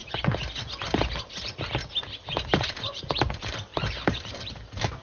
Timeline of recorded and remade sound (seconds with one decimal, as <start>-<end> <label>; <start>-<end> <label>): 0.0-2.4 recorded; 2.4-5.0 remade